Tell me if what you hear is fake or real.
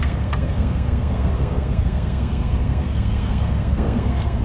fake